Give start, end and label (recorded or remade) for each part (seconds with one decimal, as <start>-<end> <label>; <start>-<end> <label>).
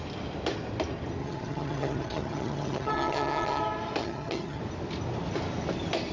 0.0-1.2 recorded; 1.2-3.6 remade; 3.6-4.0 recorded; 4.0-4.6 remade; 4.6-6.1 recorded